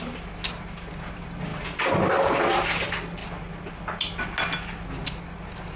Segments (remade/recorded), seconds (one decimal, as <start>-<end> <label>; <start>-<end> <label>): 0.0-5.8 recorded